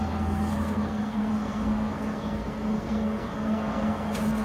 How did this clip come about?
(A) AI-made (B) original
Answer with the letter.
A